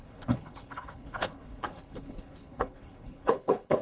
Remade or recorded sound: remade